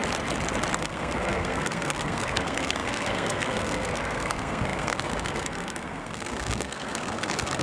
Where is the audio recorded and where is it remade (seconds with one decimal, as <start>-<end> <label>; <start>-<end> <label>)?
0.0-0.8 recorded; 0.8-7.6 remade